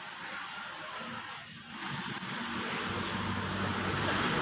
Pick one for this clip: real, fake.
real